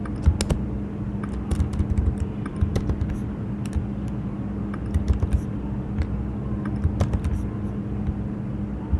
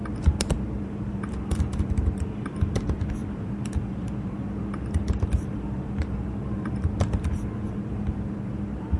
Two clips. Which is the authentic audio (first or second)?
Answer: first